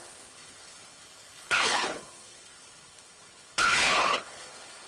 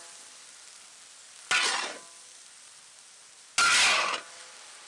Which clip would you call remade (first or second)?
first